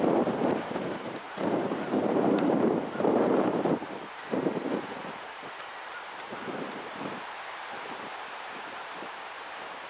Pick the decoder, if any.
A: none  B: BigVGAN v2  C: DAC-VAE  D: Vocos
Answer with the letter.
B